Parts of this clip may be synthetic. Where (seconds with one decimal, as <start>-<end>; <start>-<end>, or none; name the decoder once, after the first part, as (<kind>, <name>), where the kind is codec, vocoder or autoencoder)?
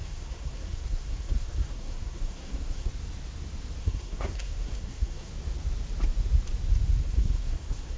0.0-2.9 (codec, SNAC); 3.8-5.3; 7.0-8.0